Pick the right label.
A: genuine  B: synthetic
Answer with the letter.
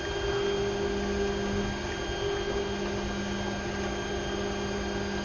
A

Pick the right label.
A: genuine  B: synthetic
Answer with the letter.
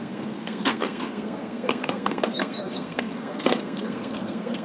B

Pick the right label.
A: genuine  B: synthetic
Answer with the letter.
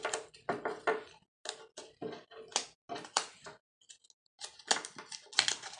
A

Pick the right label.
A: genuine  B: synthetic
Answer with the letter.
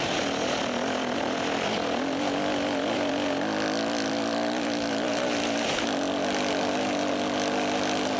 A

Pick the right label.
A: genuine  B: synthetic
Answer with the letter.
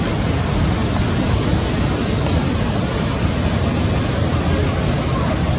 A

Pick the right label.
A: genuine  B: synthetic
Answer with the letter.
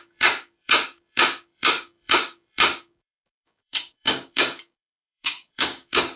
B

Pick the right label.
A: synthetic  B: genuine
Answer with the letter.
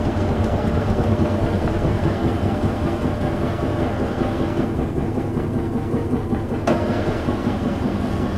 A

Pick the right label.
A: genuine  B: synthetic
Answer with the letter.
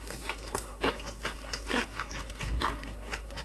B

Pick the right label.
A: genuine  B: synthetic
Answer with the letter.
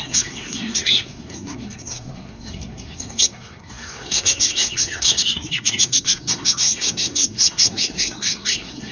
B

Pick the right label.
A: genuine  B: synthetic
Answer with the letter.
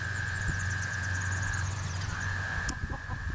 B